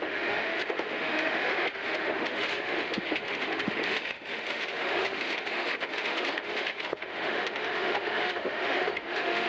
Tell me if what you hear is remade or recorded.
remade